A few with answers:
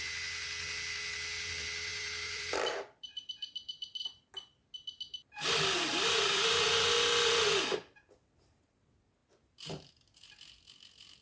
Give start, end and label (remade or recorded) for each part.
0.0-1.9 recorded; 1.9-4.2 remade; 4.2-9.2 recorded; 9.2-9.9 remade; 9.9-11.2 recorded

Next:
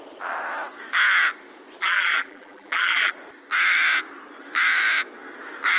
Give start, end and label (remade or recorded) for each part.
0.0-1.8 recorded; 1.8-3.1 remade; 3.1-5.8 recorded